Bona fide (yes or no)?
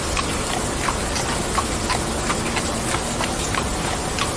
yes